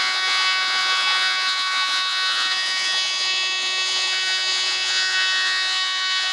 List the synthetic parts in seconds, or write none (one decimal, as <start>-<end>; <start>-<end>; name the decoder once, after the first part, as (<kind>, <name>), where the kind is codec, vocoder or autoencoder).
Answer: 0.0-6.3 (vocoder, Vocos)

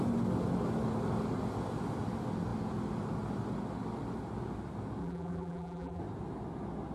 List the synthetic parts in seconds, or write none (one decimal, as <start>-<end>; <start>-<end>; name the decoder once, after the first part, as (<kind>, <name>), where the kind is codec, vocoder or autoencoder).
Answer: 5.0-6.0 (vocoder, BigVGAN v2)

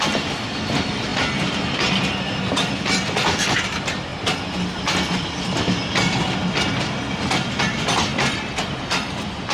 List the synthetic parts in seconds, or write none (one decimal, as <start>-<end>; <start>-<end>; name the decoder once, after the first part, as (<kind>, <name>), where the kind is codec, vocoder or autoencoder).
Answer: none